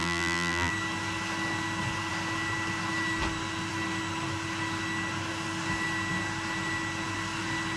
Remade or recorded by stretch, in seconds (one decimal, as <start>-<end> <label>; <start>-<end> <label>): 0.0-0.7 remade; 0.7-7.8 recorded